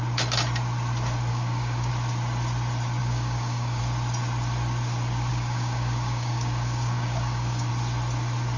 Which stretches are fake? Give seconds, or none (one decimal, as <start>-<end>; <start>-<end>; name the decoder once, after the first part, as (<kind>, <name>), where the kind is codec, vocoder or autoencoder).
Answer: 1.3-1.9 (codec, DAC); 3.0-3.8; 5.3-7.7